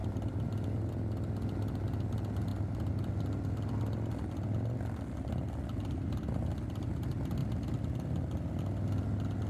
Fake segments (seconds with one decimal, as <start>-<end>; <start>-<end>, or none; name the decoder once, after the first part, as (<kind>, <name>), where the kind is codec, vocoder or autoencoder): 0.0-0.9 (vocoder, BigVGAN v2)